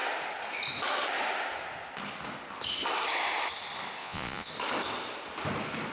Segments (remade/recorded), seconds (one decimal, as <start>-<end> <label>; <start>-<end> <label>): 0.0-4.0 recorded; 4.0-4.5 remade; 4.5-5.9 recorded